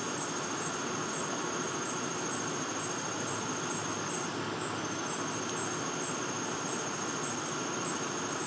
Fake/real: real